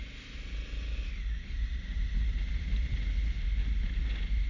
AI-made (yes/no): no